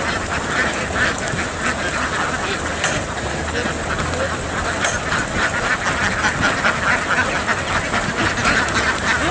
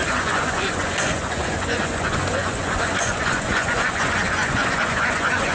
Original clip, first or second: first